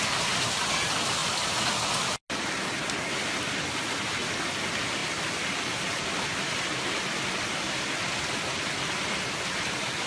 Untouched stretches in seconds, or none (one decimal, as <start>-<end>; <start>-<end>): 0.0-10.1